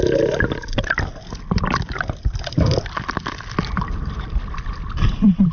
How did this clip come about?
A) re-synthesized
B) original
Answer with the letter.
B